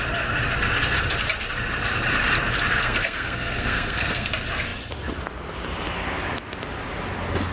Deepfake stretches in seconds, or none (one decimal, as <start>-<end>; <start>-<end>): 2.8-4.3